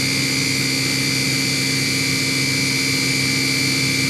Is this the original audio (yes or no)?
yes